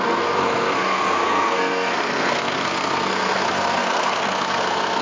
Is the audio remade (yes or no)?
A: yes